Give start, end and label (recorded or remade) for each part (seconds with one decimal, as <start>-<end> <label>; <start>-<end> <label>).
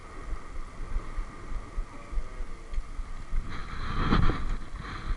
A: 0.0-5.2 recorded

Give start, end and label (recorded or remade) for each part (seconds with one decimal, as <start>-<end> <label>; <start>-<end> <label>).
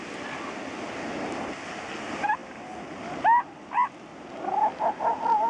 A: 0.0-5.5 recorded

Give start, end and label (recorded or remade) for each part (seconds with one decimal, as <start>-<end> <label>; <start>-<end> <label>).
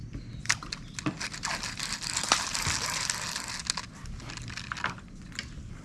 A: 0.0-5.8 recorded